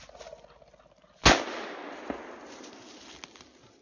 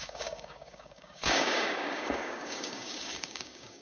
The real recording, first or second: first